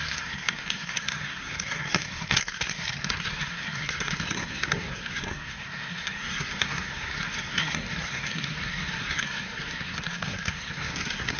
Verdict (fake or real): fake